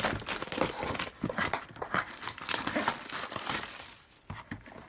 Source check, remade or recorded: remade